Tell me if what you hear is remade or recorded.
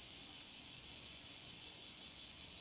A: remade